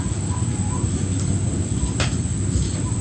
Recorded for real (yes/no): yes